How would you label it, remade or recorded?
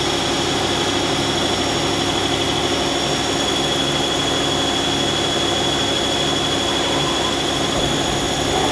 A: recorded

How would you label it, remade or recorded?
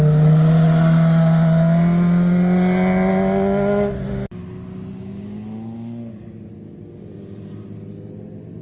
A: recorded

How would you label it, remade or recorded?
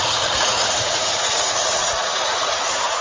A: remade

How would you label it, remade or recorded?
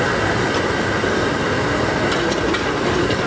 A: recorded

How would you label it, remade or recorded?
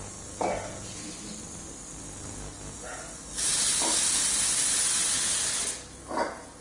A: recorded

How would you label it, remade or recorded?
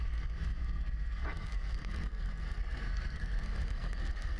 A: remade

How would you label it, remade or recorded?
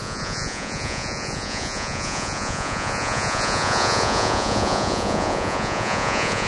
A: remade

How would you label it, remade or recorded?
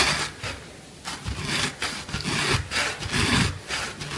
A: recorded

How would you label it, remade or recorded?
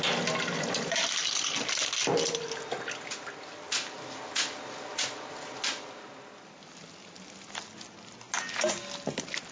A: recorded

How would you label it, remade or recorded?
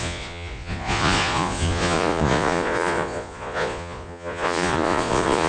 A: remade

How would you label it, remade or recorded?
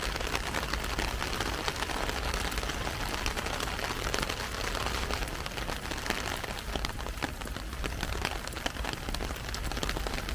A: recorded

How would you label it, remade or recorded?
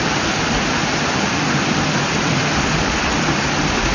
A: recorded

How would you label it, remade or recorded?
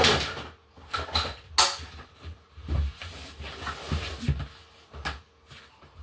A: recorded